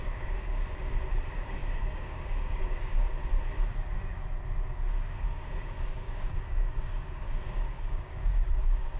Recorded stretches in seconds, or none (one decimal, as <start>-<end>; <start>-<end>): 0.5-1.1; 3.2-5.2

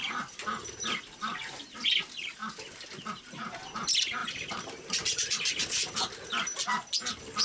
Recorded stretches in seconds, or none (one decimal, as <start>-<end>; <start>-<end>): 0.0-4.2; 6.8-7.4

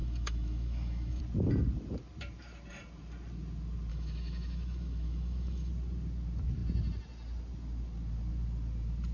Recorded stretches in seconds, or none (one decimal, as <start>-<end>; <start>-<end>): 1.2-3.9; 5.7-9.1

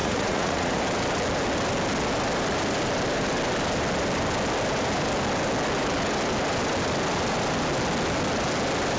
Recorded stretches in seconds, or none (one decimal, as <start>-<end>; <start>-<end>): 0.8-9.0